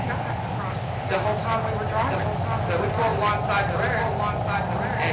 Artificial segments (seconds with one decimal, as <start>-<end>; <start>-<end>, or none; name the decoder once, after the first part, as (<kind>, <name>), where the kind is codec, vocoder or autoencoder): none